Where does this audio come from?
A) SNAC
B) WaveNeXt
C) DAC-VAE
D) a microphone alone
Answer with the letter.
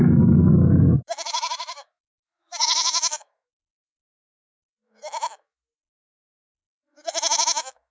C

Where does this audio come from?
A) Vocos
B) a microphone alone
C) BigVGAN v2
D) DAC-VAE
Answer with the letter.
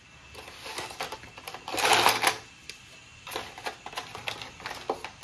B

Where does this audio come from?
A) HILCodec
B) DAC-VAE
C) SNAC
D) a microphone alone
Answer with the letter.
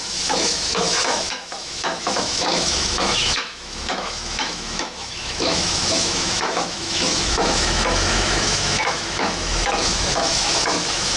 B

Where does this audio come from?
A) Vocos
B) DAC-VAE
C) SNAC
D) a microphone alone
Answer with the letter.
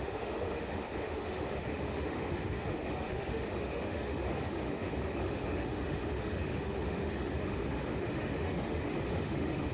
B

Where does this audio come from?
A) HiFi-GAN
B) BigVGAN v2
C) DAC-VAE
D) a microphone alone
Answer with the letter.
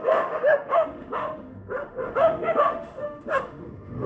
C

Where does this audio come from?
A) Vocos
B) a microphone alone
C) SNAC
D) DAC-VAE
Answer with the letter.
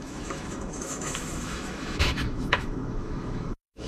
D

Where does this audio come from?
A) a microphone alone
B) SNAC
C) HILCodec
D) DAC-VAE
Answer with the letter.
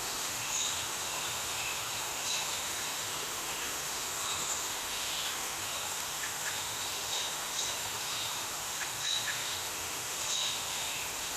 D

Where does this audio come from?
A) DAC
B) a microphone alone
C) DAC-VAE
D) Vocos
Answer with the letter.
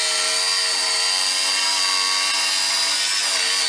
B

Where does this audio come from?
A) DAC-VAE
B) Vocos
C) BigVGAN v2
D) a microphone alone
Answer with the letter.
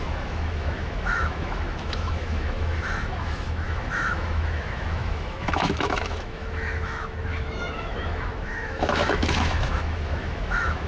A